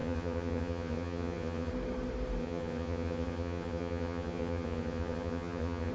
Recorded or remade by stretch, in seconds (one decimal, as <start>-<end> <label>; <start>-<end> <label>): 0.0-1.7 remade; 1.7-2.4 recorded; 2.4-5.9 remade